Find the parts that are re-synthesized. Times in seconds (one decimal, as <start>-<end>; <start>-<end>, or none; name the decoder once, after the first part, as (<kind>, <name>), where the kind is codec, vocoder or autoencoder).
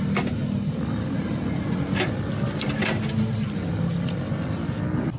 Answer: none